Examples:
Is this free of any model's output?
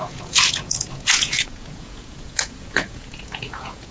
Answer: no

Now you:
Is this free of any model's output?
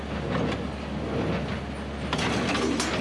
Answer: yes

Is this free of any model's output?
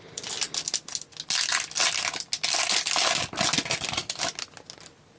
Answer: yes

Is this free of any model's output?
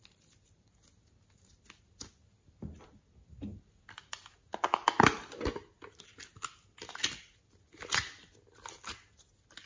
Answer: yes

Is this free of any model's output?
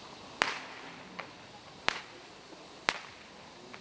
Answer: yes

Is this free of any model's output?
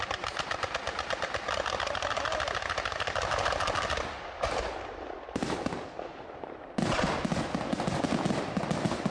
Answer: yes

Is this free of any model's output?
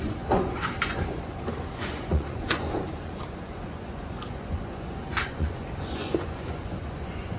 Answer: no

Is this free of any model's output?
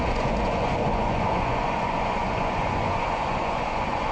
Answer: no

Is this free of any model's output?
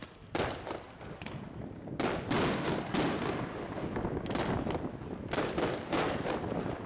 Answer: yes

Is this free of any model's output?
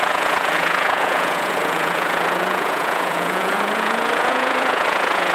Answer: no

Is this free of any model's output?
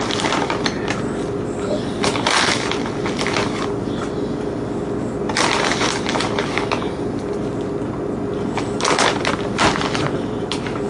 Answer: yes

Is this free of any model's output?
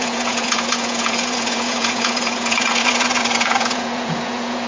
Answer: no